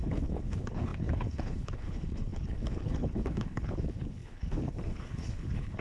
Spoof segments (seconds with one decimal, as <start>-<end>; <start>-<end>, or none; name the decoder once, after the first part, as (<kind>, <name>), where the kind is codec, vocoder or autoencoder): 0.0-5.8 (codec, HILCodec)